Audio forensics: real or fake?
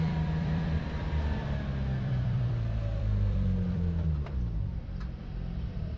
fake